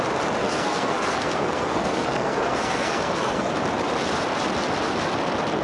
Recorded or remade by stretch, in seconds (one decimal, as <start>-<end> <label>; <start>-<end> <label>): 0.0-0.4 recorded; 0.4-3.5 remade; 3.5-5.6 recorded